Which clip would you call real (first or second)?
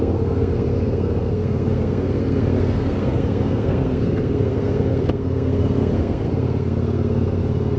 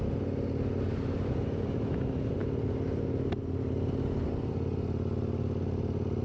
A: second